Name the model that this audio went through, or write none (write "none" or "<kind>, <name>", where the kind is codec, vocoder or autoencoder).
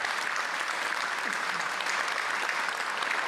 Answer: none